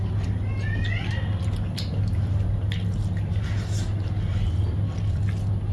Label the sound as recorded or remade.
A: recorded